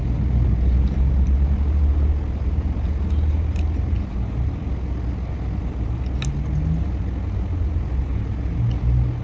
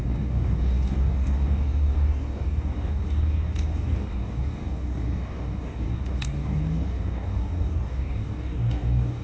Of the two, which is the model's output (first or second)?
second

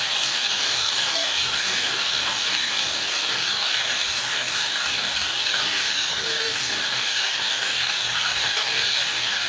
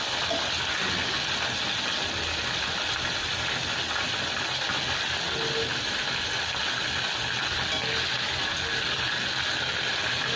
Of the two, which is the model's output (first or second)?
first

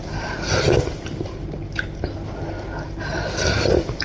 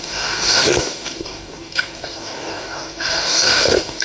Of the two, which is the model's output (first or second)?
second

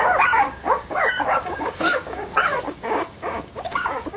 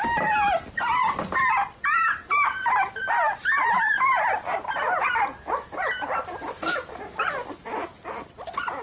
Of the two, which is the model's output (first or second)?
first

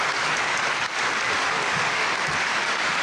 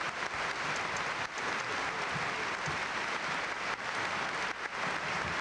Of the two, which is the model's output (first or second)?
first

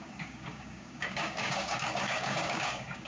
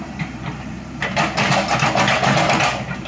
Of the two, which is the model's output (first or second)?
first